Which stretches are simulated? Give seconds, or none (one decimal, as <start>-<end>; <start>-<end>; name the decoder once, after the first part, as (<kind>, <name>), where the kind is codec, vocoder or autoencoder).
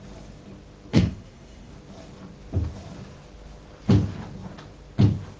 0.9-1.7 (codec, SNAC)